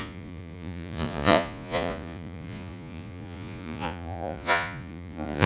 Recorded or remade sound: remade